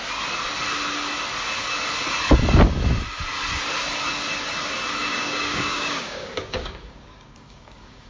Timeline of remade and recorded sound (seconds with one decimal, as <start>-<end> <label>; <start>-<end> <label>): 0.0-5.1 recorded; 5.1-8.1 remade